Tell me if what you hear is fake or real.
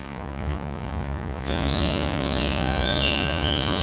fake